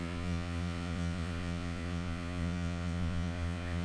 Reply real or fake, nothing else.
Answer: fake